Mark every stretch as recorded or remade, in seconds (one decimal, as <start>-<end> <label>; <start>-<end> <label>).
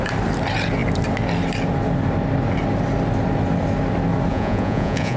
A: 0.0-4.3 recorded; 4.3-5.2 remade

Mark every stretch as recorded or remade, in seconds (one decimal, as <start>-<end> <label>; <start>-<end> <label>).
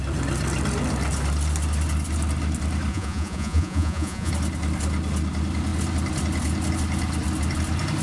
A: 0.0-2.9 recorded; 2.9-4.3 remade; 4.3-8.0 recorded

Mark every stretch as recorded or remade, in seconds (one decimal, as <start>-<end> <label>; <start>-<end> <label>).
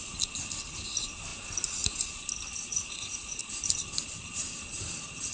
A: 0.0-2.7 recorded; 2.7-3.4 remade; 3.4-5.3 recorded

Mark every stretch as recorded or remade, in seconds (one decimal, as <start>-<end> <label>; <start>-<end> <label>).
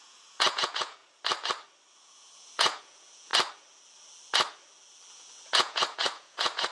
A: 0.0-1.0 remade; 1.0-1.9 recorded; 1.9-3.3 remade; 3.3-5.1 recorded; 5.1-6.7 remade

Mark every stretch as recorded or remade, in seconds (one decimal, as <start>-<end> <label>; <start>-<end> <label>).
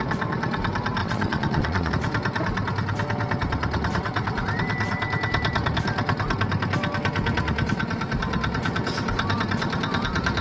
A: 0.0-1.0 recorded; 1.0-1.9 remade; 1.9-10.4 recorded